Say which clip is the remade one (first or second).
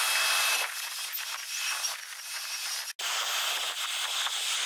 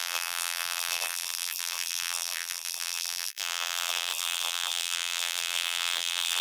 second